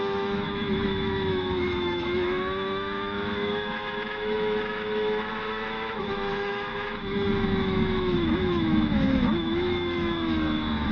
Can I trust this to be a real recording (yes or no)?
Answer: no